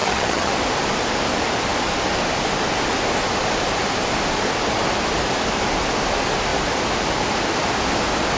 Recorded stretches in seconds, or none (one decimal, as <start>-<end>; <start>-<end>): 0.5-8.4